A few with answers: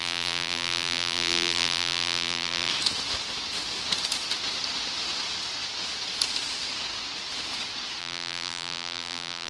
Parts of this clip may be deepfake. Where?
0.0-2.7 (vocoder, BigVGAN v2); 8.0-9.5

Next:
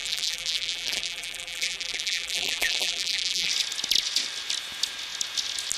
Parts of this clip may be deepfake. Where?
0.0-3.5 (vocoder, BigVGAN v2)

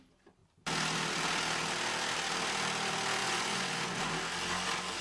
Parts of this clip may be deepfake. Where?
3.2-4.1 (vocoder, Vocos)